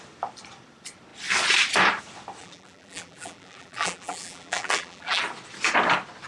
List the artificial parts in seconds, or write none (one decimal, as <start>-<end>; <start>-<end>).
2.4-5.2